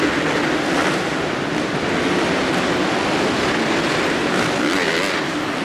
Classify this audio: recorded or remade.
recorded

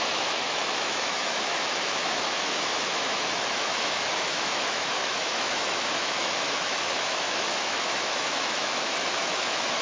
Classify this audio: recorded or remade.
remade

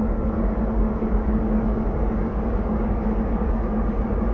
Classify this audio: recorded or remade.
remade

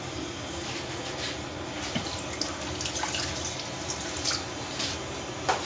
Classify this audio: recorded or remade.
recorded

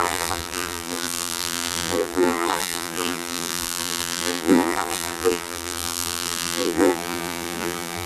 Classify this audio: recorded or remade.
remade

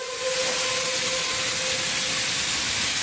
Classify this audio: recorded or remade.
recorded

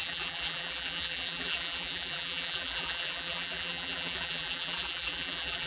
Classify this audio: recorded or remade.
remade